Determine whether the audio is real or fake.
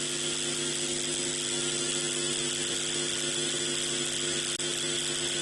real